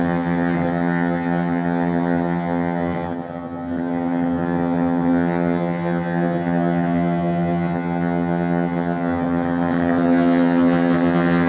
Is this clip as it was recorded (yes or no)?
no